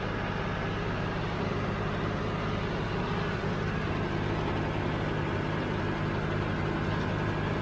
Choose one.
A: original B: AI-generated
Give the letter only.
A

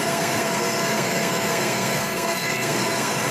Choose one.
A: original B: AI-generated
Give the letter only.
B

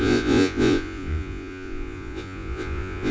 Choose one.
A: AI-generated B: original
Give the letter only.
A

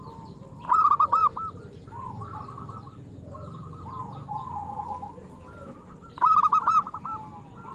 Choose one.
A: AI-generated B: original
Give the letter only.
B